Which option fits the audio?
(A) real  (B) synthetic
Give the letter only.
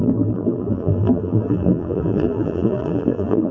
B